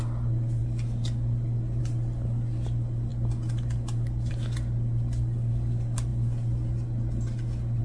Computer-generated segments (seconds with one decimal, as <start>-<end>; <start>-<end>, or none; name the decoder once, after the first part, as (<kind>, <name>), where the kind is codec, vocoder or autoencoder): none